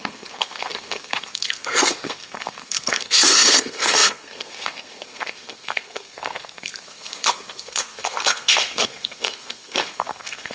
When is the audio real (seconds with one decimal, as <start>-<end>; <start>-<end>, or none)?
none